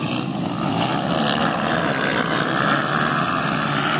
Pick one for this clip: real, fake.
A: real